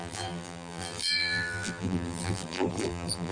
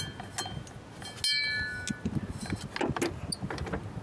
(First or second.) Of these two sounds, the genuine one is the second